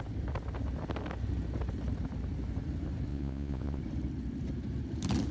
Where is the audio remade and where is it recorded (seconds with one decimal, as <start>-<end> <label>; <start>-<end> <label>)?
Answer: 0.0-3.1 recorded; 3.1-3.8 remade; 3.8-5.3 recorded